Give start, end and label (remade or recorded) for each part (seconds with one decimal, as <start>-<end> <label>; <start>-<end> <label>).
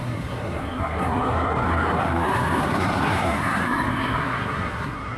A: 0.0-5.2 remade